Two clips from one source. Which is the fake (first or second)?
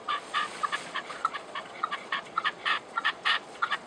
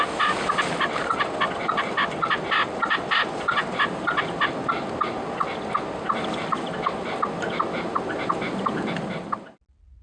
first